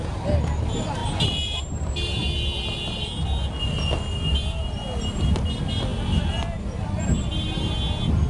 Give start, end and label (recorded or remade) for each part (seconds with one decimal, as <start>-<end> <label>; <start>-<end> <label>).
0.0-8.3 recorded